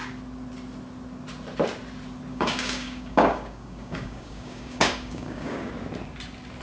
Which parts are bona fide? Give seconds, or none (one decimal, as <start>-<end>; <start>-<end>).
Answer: 0.0-2.3; 5.7-6.6